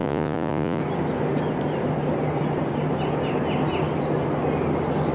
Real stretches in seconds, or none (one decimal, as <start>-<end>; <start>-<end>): 0.8-5.1